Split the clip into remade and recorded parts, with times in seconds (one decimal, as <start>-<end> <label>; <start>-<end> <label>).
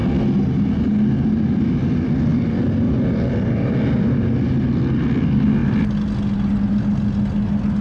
0.0-7.8 recorded